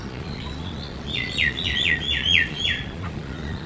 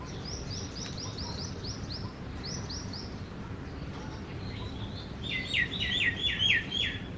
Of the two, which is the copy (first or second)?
first